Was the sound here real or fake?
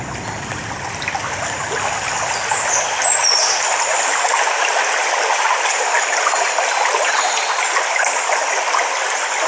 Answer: real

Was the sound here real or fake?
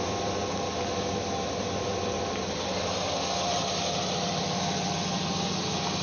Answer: real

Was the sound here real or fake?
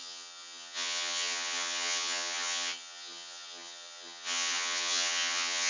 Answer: fake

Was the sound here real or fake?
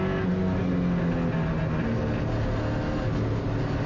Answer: real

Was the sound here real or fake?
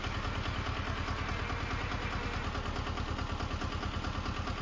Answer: real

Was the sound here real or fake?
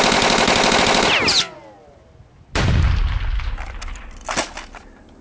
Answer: real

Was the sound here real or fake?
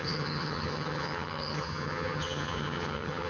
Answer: fake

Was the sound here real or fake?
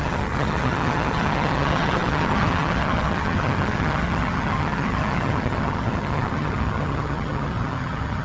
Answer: fake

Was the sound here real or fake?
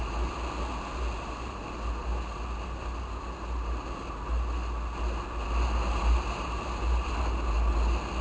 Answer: real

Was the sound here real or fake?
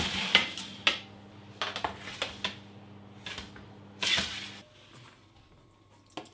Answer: real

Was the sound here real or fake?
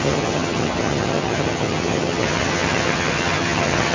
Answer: fake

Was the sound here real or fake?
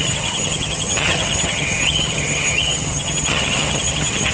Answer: fake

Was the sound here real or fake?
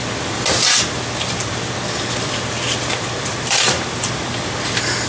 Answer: real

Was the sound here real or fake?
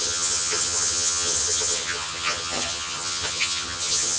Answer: fake